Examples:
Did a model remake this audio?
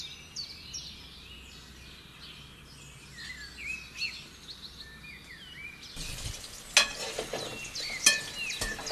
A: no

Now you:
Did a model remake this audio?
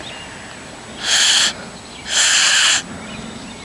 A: no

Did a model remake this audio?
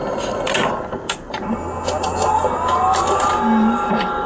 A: no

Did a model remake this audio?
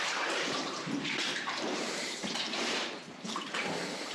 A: yes